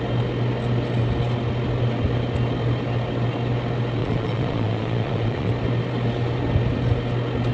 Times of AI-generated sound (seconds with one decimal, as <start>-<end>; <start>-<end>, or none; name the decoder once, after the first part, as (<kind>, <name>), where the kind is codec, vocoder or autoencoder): 4.0-5.5 (vocoder, Vocos)